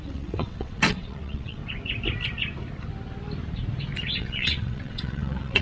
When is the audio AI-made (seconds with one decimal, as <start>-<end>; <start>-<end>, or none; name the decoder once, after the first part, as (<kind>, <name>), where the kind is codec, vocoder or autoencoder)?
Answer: 0.0-1.6 (vocoder, WaveNeXt); 4.2-5.6